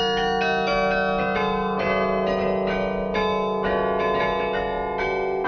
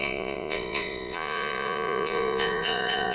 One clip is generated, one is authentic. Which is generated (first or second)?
second